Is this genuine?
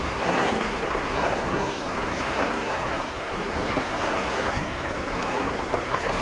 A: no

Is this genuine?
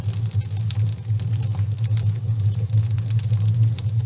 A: yes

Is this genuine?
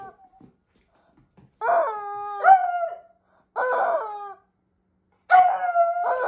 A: yes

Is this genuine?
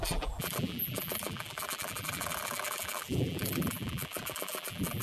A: no